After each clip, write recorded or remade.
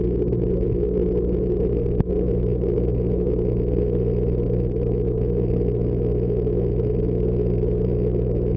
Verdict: remade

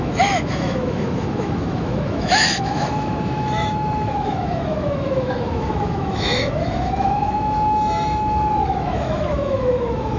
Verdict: remade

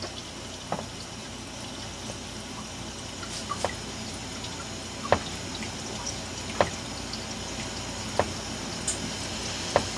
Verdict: recorded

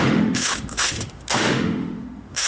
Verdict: remade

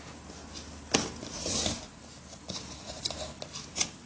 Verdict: recorded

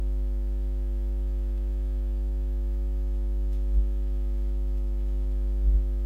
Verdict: remade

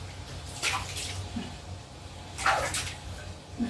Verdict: recorded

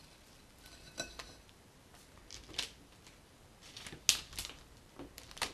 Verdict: recorded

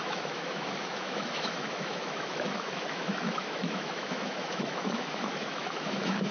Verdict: remade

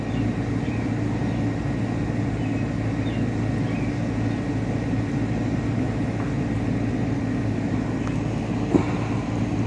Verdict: recorded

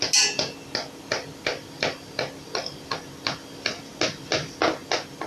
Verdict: recorded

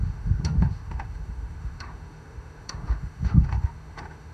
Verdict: remade